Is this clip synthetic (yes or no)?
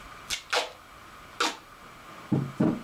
no